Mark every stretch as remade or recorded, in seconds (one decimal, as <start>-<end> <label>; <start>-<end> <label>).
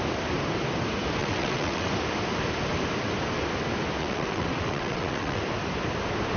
0.0-1.2 recorded; 1.2-1.9 remade; 1.9-4.0 recorded; 4.0-5.4 remade; 5.4-6.4 recorded